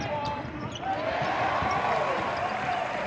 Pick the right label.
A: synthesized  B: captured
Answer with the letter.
B